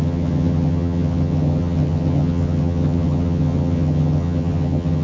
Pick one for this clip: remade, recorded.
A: remade